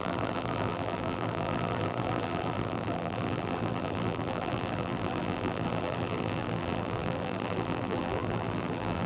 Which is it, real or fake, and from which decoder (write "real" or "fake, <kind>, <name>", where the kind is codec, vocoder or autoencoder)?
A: fake, vocoder, BigVGAN v2